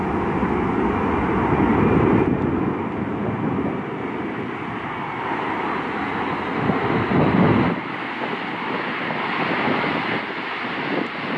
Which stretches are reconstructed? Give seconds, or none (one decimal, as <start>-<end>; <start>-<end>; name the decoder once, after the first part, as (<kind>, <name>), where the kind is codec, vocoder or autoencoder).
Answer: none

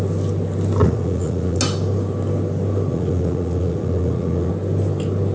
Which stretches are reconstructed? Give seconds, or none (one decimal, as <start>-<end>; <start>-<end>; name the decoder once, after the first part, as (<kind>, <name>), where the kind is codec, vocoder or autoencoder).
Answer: 0.8-1.6 (vocoder, Vocos); 2.9-4.5

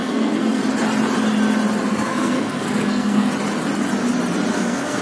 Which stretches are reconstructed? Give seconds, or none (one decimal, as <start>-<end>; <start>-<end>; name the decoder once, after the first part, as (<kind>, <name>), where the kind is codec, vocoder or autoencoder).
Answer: 0.0-0.6 (codec, SNAC); 1.9-3.3; 4.5-5.0

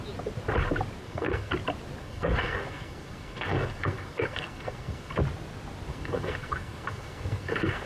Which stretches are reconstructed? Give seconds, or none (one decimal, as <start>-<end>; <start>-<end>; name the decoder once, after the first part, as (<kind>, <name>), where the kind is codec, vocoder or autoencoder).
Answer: 1.0-1.5 (codec, SNAC); 2.0-5.1; 5.9-7.9

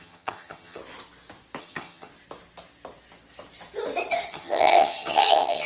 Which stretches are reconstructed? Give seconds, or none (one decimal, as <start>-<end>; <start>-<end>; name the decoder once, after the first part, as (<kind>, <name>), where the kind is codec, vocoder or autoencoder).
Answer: 0.0-0.8 (vocoder, HiFi-GAN); 1.6-2.1; 4.3-5.7

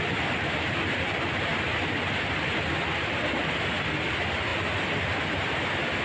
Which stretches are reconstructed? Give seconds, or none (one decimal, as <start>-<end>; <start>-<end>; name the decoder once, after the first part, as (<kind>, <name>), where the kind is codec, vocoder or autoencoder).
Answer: none